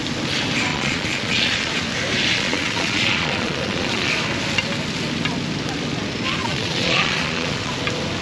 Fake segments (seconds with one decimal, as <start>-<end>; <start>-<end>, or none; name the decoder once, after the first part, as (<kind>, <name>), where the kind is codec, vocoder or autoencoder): 0.7-1.7 (vocoder, Vocos); 2.3-4.1; 6.4-7.7